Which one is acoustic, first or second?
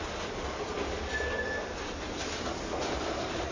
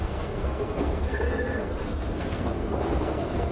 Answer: first